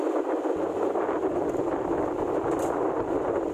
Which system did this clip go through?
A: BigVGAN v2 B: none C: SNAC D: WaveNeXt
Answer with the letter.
B